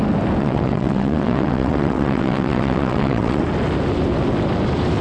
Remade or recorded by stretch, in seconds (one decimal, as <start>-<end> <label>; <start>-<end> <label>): 0.0-0.4 recorded; 0.4-3.4 remade; 3.4-5.0 recorded